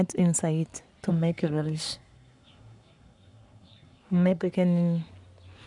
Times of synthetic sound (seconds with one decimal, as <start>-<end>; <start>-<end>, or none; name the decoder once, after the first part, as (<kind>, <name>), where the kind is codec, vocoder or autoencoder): 1.1-4.5 (codec, SNAC)